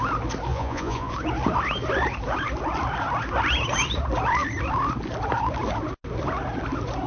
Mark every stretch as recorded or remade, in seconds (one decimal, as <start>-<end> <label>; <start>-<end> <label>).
0.0-0.5 recorded; 0.5-1.1 remade; 1.1-7.1 recorded